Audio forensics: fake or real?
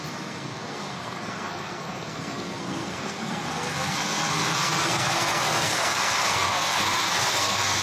fake